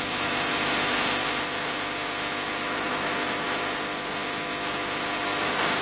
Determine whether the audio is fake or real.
real